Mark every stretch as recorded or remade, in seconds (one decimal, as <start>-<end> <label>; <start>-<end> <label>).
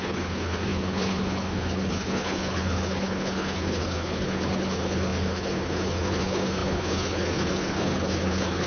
0.0-8.7 remade